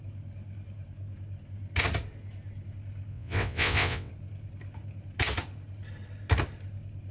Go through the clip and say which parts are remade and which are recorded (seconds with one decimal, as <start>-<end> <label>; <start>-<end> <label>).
0.0-3.1 recorded; 3.1-4.1 remade; 4.1-7.1 recorded